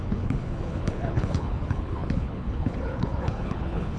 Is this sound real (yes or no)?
no